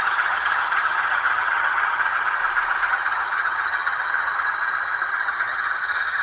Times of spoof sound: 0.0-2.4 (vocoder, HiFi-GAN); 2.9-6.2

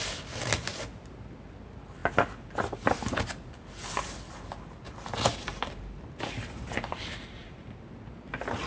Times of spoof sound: none

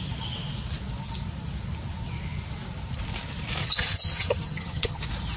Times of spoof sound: 3.6-5.0 (vocoder, HiFi-GAN)

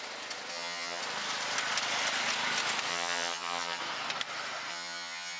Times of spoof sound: 0.5-1.0 (vocoder, HiFi-GAN); 2.9-3.8; 4.7-5.4

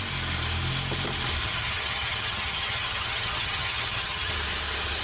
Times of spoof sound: 1.4-4.3 (vocoder, HiFi-GAN)

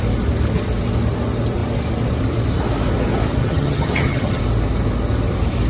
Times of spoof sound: 3.4-4.4 (vocoder, HiFi-GAN)

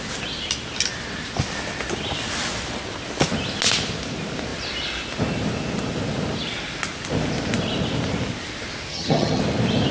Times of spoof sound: 8.9-9.4 (vocoder, HiFi-GAN)